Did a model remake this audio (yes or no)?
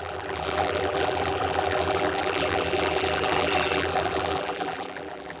yes